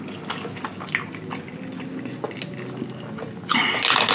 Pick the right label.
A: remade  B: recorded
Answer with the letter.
B